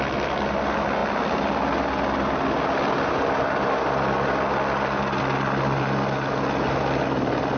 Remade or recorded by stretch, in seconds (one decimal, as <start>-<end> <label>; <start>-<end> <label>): 0.0-7.6 recorded